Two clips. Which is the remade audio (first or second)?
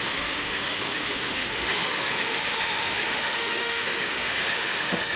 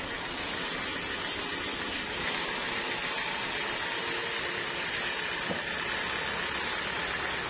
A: first